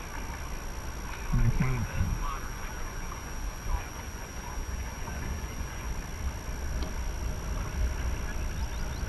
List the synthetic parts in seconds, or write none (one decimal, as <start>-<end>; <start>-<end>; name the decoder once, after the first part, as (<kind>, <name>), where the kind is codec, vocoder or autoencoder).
1.8-5.9 (vocoder, Vocos)

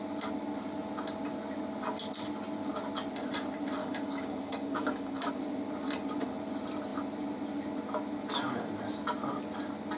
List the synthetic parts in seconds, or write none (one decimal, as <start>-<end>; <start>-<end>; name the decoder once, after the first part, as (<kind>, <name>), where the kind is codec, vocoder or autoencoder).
3.8-5.3 (codec, DAC)

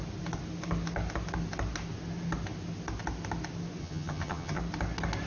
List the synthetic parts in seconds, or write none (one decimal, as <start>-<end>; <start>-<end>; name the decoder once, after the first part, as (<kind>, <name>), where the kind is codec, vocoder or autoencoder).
3.8-4.6 (vocoder, HiFi-GAN)

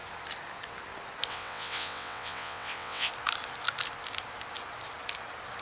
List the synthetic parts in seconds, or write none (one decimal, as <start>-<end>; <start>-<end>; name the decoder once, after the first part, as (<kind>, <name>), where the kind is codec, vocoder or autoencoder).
1.3-3.1 (vocoder, WaveNeXt)

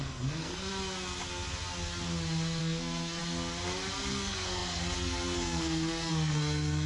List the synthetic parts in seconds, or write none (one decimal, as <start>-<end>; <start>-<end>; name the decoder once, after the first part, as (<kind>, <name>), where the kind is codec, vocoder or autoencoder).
0.0-0.7 (codec, SNAC); 2.6-3.2; 4.1-6.9

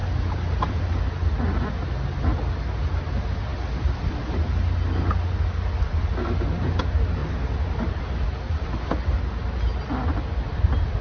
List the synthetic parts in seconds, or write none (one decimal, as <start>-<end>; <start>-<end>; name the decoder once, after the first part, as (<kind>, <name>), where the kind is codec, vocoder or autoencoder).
0.0-1.0 (vocoder, BigVGAN v2); 7.2-8.0

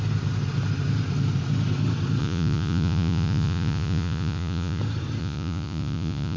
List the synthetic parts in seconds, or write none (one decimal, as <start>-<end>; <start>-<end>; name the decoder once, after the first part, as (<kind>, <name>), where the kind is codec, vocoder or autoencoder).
2.2-4.8 (vocoder, Vocos); 5.2-6.4

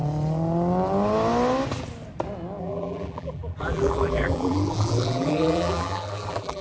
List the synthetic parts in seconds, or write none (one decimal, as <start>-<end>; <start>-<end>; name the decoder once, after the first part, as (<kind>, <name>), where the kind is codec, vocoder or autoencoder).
2.6-6.6 (vocoder, BigVGAN v2)